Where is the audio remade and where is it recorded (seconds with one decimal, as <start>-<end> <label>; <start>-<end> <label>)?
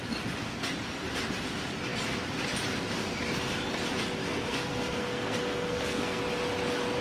0.0-4.2 recorded; 4.2-6.2 remade; 6.2-7.0 recorded